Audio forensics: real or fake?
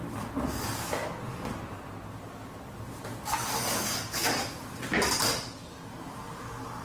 real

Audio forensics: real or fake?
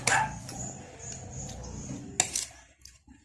real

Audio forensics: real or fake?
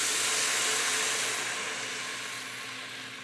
real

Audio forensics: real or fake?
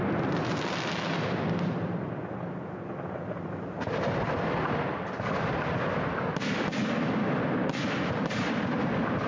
real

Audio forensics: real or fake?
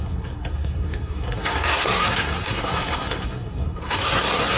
fake